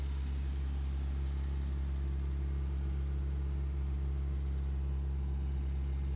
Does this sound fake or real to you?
real